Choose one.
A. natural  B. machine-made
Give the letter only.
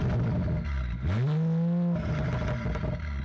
A